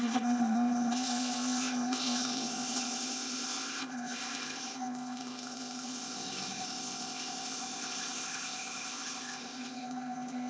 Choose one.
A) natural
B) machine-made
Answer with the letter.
B